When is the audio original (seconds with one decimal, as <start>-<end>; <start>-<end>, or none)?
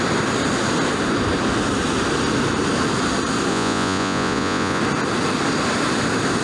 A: 0.0-3.5; 4.8-6.4